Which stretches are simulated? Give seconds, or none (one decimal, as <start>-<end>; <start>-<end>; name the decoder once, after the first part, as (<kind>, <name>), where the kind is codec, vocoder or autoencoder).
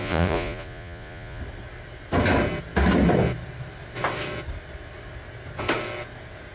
0.0-1.4 (vocoder, Vocos)